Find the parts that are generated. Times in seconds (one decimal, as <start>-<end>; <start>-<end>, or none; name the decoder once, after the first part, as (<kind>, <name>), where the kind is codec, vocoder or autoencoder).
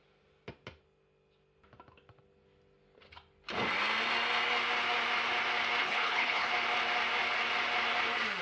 5.8-6.5 (codec, HILCodec)